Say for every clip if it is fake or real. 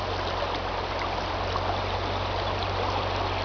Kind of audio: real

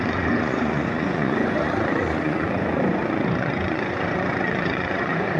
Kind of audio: fake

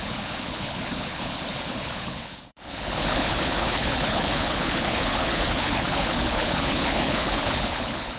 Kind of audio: fake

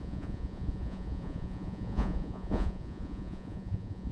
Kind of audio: fake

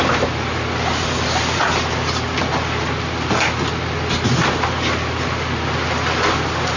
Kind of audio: real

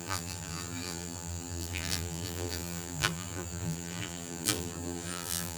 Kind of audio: fake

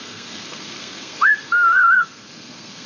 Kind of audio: fake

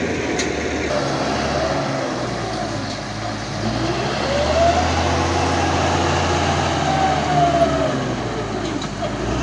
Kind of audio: real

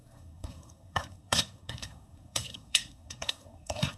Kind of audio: fake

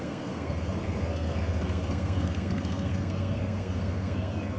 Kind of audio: fake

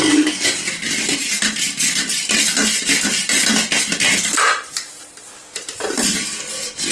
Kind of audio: real